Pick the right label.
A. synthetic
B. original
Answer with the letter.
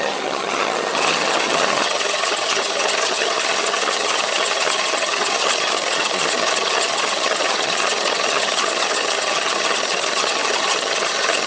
A